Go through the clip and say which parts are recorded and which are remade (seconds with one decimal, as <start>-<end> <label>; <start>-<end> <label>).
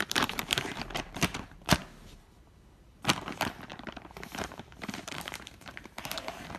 0.0-1.8 remade; 1.8-3.2 recorded; 3.2-6.6 remade